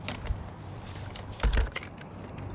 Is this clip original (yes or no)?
no